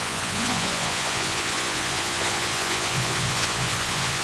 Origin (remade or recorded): remade